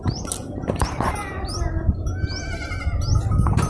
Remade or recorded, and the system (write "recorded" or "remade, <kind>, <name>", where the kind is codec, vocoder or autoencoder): recorded